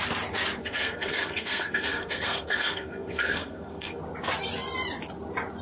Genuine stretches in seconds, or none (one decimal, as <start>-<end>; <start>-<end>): 0.0-0.6; 4.0-5.6

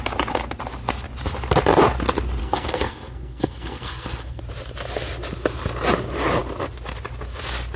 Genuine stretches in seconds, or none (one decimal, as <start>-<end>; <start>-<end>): 0.0-2.4; 4.4-7.8